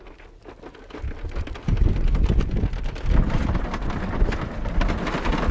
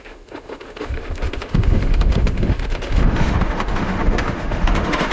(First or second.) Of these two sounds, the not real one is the second